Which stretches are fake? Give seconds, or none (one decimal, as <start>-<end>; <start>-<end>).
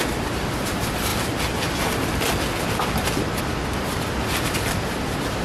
none